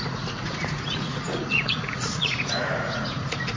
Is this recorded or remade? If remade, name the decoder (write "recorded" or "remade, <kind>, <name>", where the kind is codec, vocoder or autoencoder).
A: remade, vocoder, Vocos